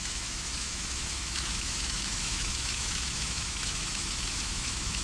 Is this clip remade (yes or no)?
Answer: yes